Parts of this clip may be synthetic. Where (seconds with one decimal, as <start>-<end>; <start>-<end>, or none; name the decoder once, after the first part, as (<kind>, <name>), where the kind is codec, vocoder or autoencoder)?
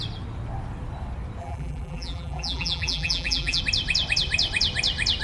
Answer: 1.4-3.6 (vocoder, BigVGAN v2)